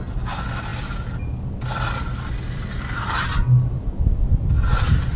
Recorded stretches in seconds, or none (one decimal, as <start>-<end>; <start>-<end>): 0.0-5.2